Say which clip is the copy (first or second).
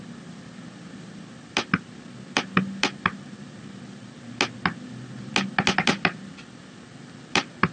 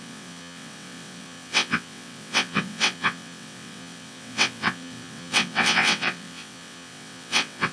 second